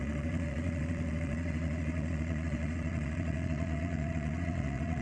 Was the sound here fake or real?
fake